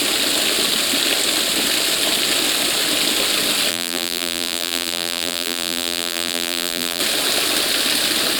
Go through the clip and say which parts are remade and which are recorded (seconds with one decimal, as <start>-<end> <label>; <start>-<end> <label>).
0.0-3.7 recorded; 3.7-7.0 remade; 7.0-8.4 recorded